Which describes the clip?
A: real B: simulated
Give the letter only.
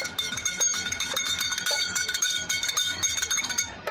B